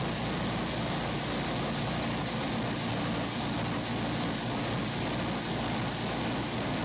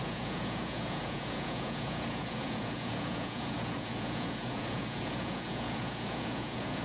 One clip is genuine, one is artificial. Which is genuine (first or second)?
first